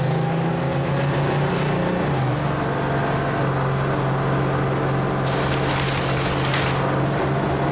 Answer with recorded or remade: recorded